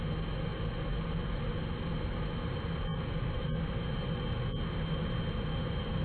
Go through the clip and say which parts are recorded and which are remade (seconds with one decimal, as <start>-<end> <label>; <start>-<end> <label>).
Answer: 0.0-6.0 recorded